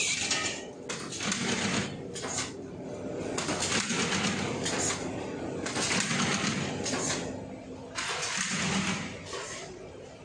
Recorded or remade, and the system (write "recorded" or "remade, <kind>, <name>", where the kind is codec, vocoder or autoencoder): recorded